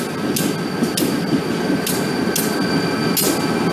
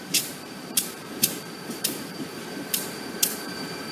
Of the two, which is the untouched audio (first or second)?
first